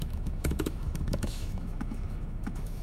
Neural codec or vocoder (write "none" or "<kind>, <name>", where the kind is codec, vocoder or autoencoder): autoencoder, DAC-VAE